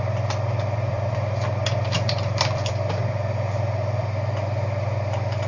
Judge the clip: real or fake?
fake